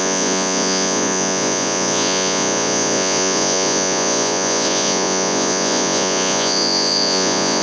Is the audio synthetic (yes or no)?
yes